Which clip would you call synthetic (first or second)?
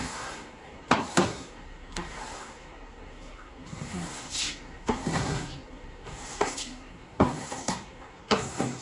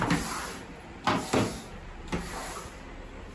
first